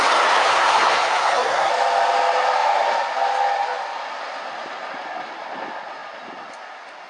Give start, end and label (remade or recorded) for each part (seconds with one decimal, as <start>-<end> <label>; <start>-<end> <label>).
0.0-0.4 recorded; 0.4-1.7 remade; 1.7-7.1 recorded